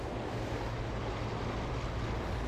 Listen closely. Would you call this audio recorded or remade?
recorded